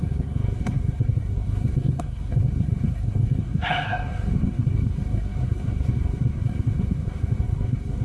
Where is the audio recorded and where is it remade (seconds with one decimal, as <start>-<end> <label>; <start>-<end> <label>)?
0.0-8.0 remade